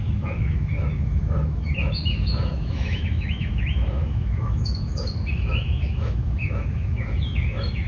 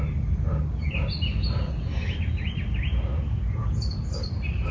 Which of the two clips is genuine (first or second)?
second